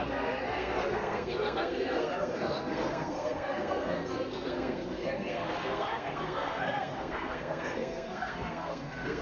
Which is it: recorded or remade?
remade